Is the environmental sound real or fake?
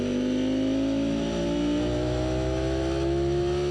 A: real